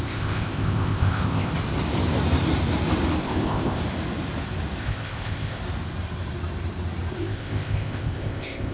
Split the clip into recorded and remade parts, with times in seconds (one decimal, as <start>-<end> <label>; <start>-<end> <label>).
0.0-1.5 remade; 1.5-3.2 recorded; 3.2-3.8 remade; 3.8-4.8 recorded; 4.8-5.6 remade; 5.6-7.2 recorded; 7.2-8.7 remade